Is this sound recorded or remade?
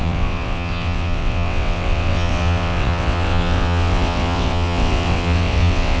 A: remade